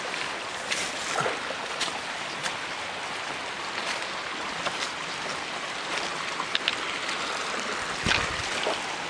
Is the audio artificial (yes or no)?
no